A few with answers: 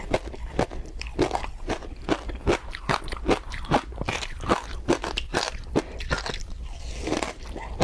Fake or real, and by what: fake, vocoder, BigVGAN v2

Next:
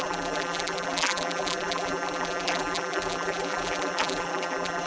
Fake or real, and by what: fake, vocoder, BigVGAN v2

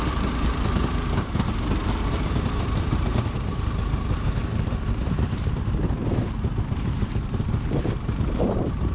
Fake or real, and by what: fake, vocoder, BigVGAN v2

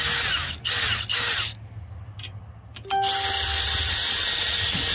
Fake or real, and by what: real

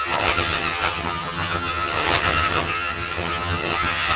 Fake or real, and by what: fake, vocoder, HiFi-GAN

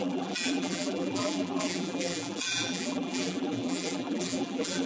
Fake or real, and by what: fake, vocoder, BigVGAN v2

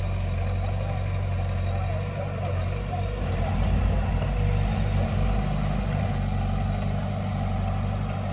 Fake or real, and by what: real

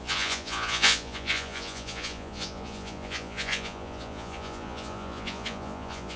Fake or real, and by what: fake, vocoder, Vocos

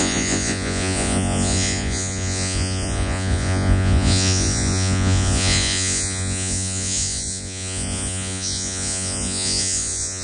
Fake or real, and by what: fake, vocoder, Vocos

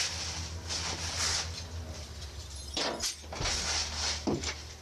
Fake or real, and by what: real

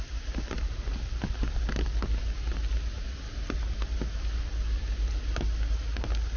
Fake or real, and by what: real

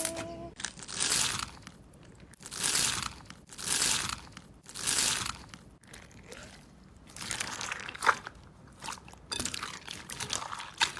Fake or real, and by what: real